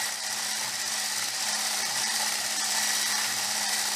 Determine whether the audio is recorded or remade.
remade